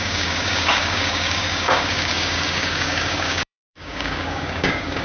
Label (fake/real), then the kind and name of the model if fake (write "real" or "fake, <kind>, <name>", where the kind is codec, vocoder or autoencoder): fake, codec, DAC